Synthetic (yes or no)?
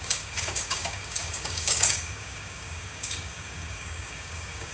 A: yes